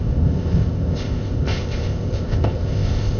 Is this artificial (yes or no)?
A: yes